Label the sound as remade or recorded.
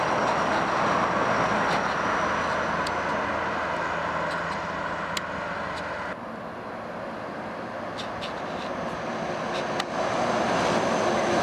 recorded